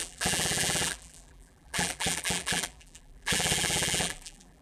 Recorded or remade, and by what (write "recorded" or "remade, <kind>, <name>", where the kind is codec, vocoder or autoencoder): remade, vocoder, BigVGAN v2